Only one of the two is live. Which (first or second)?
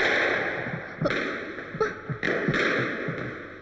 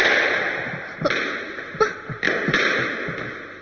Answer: first